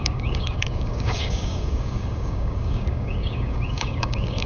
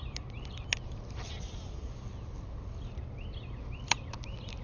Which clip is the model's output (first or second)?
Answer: first